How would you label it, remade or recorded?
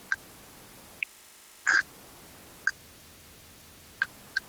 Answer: recorded